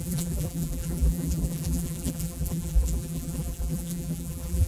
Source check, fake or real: fake